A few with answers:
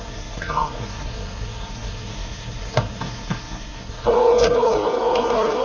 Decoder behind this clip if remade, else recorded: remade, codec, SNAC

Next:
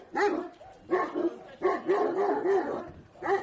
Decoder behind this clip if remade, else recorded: recorded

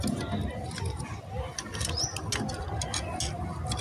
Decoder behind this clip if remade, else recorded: recorded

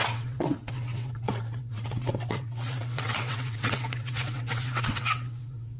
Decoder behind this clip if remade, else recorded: remade, vocoder, WaveNeXt